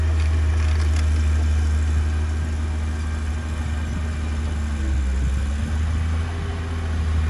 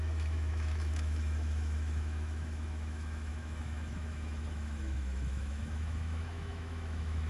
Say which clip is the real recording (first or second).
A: first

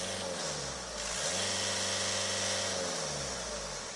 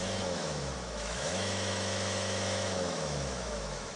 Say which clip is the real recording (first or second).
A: first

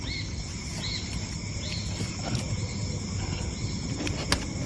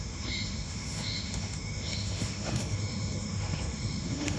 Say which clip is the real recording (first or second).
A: first